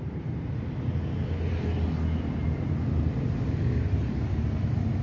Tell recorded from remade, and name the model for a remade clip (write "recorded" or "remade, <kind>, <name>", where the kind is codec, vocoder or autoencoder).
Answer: recorded